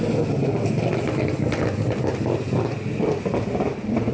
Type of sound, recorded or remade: recorded